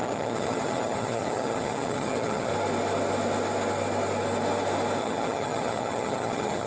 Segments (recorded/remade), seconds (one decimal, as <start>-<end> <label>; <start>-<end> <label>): 0.0-2.5 remade; 2.5-5.0 recorded; 5.0-6.7 remade